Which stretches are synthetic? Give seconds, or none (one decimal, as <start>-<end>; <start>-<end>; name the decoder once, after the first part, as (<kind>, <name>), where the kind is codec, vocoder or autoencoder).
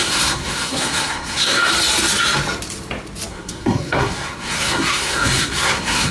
0.0-1.7 (codec, SNAC); 3.3-6.1